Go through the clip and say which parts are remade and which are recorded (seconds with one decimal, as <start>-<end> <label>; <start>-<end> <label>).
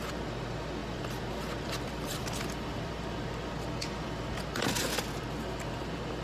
0.0-0.8 recorded; 0.8-3.5 remade; 3.5-6.2 recorded